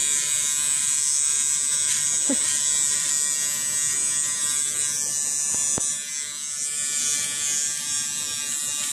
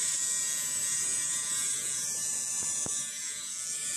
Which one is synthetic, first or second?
second